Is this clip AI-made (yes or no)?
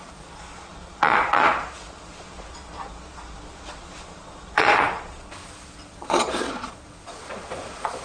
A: yes